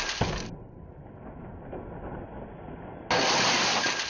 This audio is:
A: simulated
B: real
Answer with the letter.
B